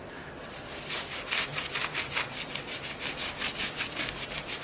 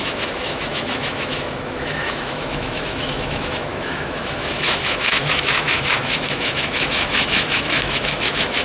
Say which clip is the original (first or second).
first